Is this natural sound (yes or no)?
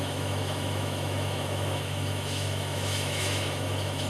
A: no